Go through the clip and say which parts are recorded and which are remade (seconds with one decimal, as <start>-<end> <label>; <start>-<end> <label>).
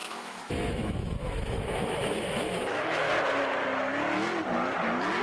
0.0-3.1 remade; 3.1-5.2 recorded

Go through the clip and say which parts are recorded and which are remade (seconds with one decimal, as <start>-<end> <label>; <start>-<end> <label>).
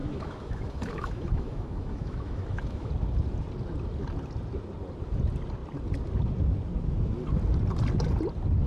0.0-2.9 remade; 2.9-8.7 recorded